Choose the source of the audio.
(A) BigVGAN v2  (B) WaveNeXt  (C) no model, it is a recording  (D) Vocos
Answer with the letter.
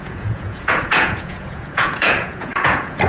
D